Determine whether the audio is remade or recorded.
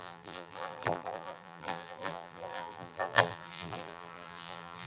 remade